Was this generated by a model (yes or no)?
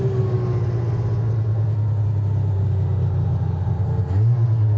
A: no